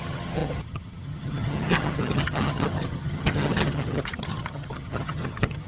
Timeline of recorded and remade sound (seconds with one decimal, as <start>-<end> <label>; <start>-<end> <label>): 0.0-5.7 remade